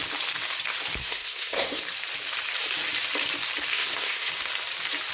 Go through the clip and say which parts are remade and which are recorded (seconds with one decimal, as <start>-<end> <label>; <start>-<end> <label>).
0.0-1.0 recorded; 1.0-1.8 remade; 1.8-3.7 recorded; 3.7-4.3 remade; 4.3-5.1 recorded